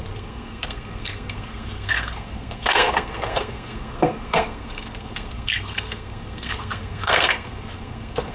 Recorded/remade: remade